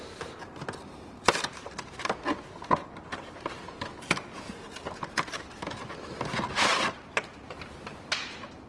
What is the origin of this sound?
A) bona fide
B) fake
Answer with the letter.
A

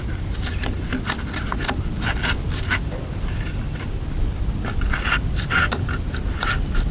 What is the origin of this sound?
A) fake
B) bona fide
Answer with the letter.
B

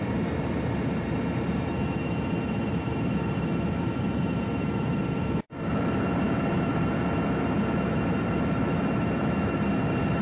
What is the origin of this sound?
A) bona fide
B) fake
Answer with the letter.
B